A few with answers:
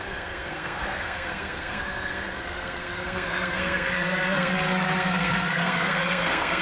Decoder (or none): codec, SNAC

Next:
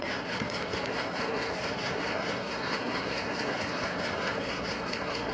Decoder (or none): codec, SNAC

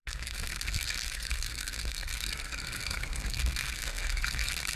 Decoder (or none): codec, SNAC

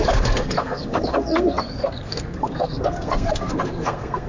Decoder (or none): codec, SNAC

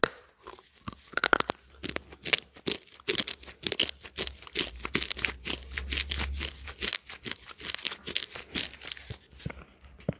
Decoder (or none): none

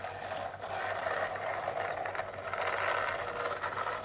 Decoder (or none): none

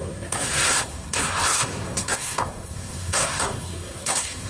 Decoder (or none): codec, SNAC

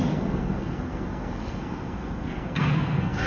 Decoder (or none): codec, SNAC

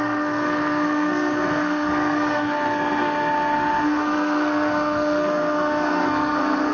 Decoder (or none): codec, SNAC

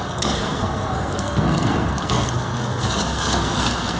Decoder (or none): codec, SNAC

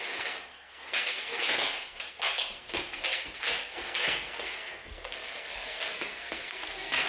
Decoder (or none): codec, SNAC